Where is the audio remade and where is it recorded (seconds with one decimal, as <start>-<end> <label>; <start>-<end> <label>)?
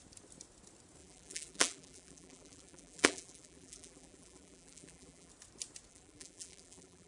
0.0-1.0 recorded; 1.0-5.3 remade; 5.3-5.9 recorded; 5.9-7.1 remade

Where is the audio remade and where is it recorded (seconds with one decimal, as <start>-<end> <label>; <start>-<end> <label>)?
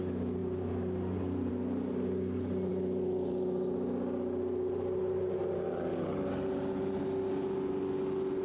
0.0-0.4 recorded; 0.4-1.5 remade; 1.5-8.4 recorded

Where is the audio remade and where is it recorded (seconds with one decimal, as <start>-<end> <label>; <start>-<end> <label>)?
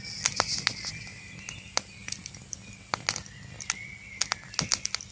0.0-5.1 recorded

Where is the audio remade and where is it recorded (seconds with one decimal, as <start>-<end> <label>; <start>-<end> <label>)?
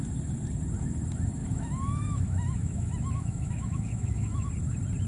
0.0-1.4 recorded; 1.4-4.5 remade; 4.5-5.1 recorded